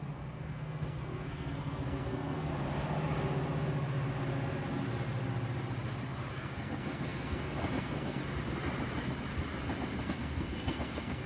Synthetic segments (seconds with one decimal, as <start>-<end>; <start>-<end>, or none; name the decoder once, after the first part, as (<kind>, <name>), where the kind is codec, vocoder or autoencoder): 0.0-2.5 (codec, SNAC); 6.3-8.2; 10.0-11.3